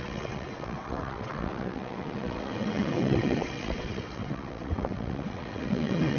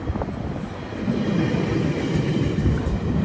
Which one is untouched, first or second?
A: second